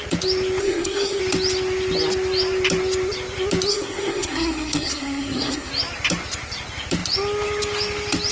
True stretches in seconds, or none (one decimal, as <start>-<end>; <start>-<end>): 0.0-0.6; 1.2-3.7; 5.7-8.3